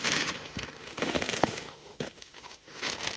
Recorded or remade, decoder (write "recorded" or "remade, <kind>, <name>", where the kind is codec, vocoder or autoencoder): remade, autoencoder, DAC-VAE